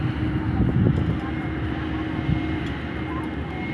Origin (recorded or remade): recorded